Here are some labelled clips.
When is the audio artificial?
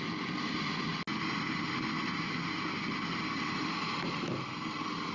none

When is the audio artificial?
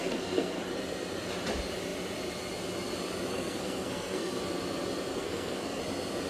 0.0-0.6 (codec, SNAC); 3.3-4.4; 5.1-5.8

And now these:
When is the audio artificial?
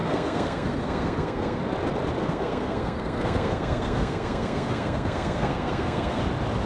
0.0-1.6 (codec, SNAC); 2.2-6.2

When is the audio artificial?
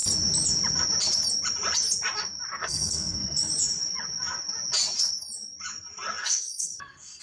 2.5-3.5 (codec, SNAC); 6.2-7.2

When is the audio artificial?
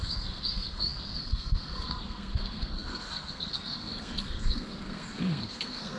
0.0-6.0 (codec, SNAC)